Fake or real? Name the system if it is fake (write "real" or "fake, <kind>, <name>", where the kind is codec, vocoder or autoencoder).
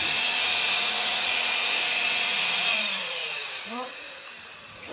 fake, vocoder, Vocos